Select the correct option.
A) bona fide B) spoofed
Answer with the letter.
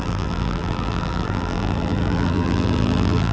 B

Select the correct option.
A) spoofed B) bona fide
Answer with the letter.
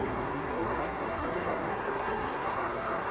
A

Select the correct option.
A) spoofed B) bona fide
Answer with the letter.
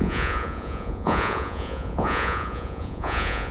A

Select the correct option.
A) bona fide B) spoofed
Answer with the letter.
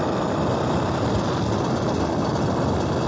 A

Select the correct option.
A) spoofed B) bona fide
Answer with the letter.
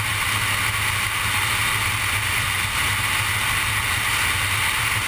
B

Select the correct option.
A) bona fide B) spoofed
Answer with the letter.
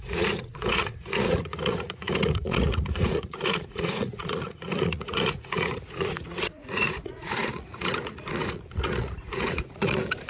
B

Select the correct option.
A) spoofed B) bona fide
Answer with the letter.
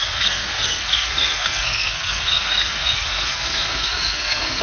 A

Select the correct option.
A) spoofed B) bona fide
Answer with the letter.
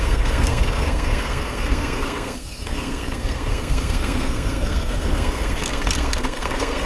A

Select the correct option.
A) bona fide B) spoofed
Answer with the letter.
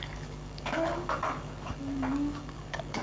B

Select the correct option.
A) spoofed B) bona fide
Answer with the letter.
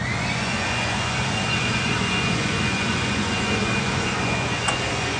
A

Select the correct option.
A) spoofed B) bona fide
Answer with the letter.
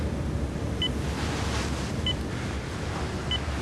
B